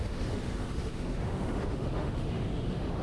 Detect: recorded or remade remade